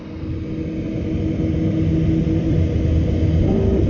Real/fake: real